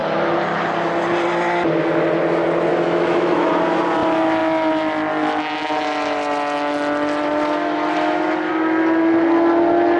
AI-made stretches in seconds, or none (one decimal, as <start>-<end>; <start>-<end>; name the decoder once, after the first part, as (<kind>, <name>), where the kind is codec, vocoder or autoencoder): 2.7-3.5 (autoencoder, DAC-VAE)